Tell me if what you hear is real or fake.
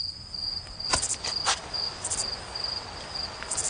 real